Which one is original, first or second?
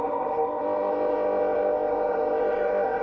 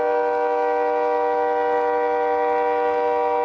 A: second